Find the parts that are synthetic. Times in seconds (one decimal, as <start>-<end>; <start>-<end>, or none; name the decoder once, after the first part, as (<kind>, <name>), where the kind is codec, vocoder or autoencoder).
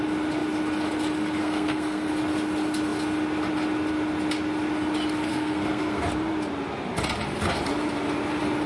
1.4-2.1 (codec, SNAC); 5.3-6.0